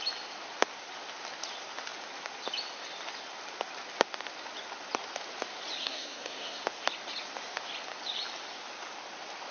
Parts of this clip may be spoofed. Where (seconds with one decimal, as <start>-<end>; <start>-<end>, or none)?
5.8-6.6